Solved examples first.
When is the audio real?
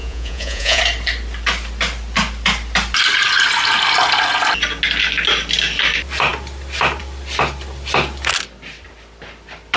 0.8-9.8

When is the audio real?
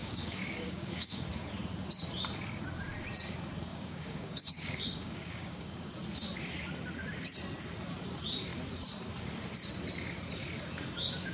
1.3-3.7; 5.9-11.3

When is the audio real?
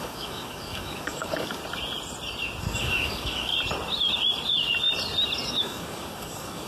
1.6-2.6; 3.5-5.5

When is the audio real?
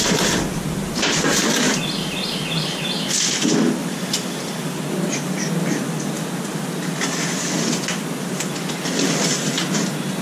0.0-3.8; 4.8-10.2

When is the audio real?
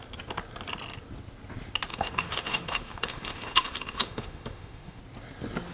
0.0-1.9; 5.0-5.7